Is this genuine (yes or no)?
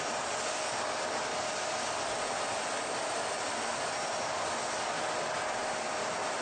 yes